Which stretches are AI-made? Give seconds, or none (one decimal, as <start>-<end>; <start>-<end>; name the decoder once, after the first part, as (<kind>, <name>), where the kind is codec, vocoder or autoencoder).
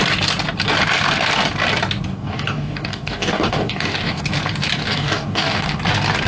2.1-4.2 (codec, DAC); 4.8-5.8